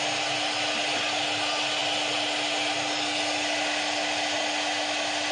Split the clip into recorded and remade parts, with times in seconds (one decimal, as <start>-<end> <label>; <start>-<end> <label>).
0.0-5.3 recorded